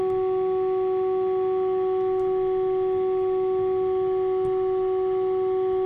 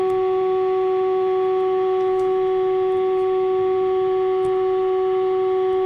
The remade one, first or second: second